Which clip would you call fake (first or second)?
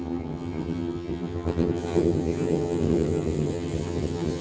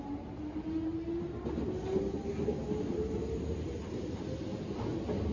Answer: first